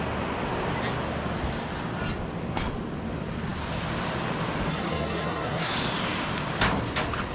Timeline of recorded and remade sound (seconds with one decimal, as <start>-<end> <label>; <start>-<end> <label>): 0.0-4.7 recorded; 4.7-5.7 remade; 5.7-7.3 recorded